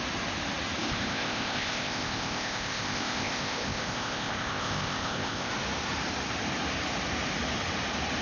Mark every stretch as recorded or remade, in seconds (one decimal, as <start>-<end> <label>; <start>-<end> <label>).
0.0-0.8 recorded; 0.8-5.5 remade; 5.5-8.2 recorded